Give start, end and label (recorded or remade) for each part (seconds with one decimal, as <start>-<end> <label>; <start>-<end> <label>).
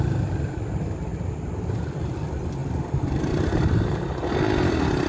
0.0-1.1 recorded; 1.1-1.7 remade; 1.7-5.1 recorded